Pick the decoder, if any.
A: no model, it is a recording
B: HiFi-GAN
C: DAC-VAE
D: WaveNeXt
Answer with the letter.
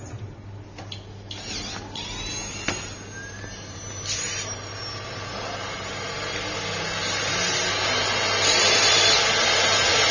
A